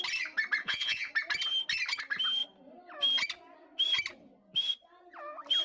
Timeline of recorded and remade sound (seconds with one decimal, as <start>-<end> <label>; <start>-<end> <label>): 0.0-0.6 recorded; 0.6-1.1 remade; 1.1-5.6 recorded